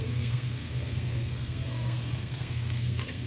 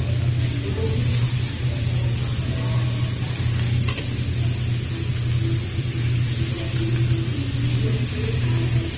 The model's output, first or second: first